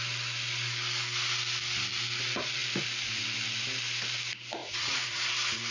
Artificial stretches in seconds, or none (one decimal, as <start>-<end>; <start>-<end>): 4.6-5.3